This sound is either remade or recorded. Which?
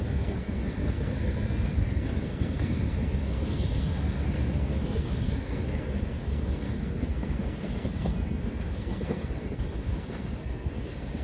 remade